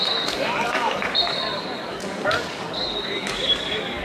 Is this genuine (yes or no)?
no